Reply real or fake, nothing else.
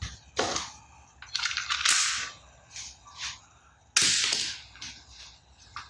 real